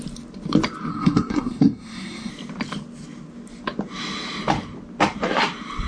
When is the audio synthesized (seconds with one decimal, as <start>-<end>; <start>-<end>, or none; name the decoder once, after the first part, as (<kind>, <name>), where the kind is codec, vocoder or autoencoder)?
0.9-2.3 (codec, SNAC)